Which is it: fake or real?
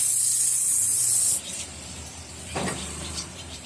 fake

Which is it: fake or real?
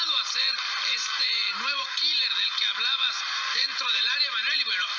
fake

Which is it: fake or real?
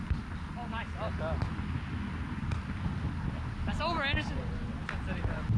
real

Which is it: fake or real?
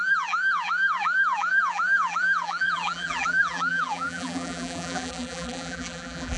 fake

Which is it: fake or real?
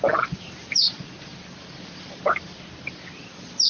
real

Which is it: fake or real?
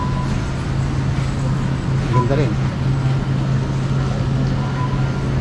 real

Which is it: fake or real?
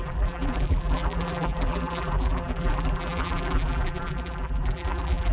fake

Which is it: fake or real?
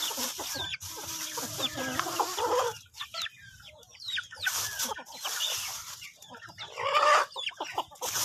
fake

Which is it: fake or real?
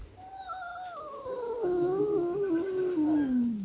real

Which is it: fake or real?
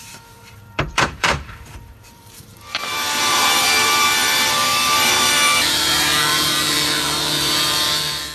fake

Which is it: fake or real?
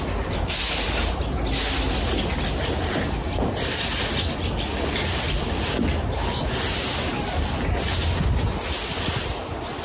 real